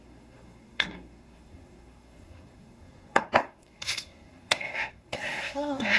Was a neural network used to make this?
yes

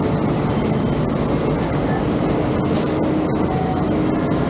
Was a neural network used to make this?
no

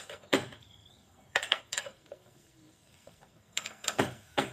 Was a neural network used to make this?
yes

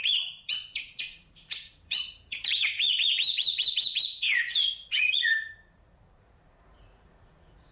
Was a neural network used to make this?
yes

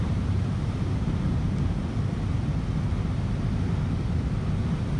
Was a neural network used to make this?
no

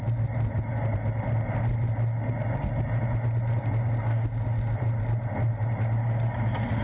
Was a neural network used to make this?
no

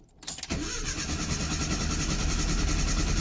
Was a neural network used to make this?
no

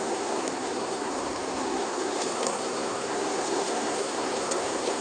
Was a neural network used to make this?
yes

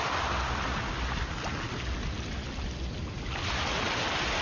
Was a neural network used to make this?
no